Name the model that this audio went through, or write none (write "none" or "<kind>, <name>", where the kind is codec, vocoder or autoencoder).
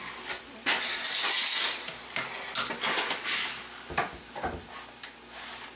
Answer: none